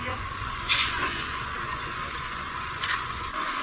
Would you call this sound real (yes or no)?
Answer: no